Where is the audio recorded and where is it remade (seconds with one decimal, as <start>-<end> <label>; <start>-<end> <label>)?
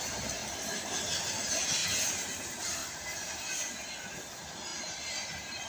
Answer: 0.0-2.8 recorded; 2.8-3.4 remade; 3.4-5.7 recorded